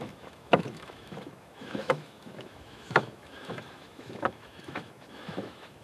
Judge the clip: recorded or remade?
remade